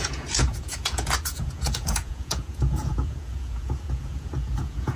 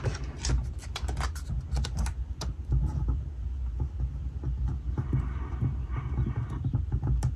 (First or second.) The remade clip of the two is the first